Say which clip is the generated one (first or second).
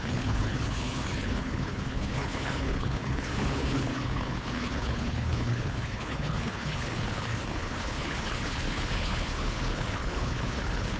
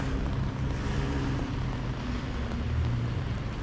first